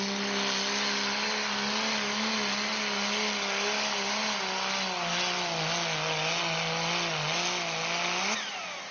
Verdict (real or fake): real